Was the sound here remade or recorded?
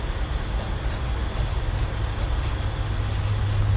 recorded